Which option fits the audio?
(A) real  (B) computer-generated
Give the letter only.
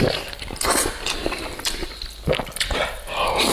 A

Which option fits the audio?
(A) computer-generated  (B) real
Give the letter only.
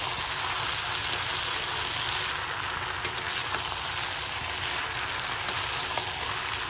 B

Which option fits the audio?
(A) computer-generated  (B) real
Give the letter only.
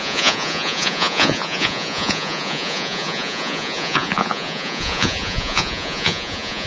A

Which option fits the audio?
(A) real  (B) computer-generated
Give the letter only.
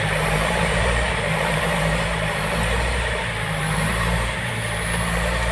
B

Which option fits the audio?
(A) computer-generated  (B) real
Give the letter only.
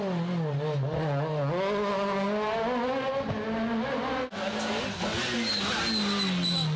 B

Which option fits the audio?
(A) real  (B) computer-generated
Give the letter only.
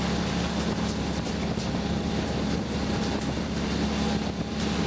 A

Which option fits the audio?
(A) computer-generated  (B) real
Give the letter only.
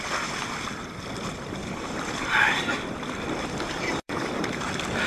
A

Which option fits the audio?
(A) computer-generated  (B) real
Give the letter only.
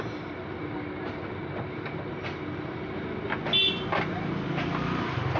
B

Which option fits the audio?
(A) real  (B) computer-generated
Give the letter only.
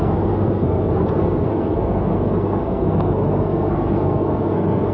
B